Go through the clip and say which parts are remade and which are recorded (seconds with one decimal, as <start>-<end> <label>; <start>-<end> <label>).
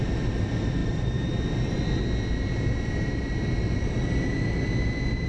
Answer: 0.0-5.3 recorded